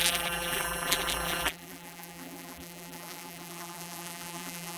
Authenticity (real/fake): fake